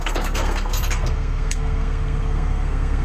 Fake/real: fake